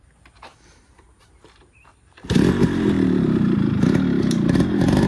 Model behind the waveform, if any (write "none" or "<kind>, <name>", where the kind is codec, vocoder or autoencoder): vocoder, BigVGAN v2